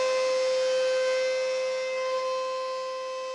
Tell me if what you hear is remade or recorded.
recorded